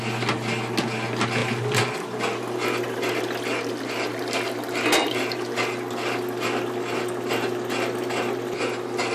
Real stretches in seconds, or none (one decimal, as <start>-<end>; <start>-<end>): 0.0-9.1